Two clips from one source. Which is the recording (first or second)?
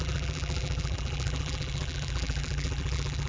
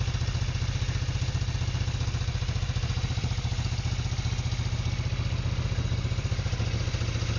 second